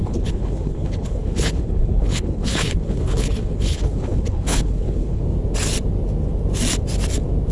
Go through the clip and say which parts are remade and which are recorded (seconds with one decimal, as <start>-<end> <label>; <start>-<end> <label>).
0.0-5.2 remade; 5.2-7.5 recorded